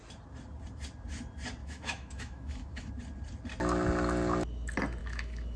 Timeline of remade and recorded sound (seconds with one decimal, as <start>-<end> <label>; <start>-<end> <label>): 0.0-1.6 recorded; 1.6-2.9 remade; 2.9-5.0 recorded; 5.0-5.6 remade